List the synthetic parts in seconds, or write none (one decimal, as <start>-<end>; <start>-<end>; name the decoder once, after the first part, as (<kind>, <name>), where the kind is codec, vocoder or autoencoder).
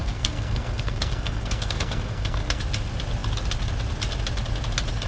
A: 0.0-2.6 (codec, SNAC)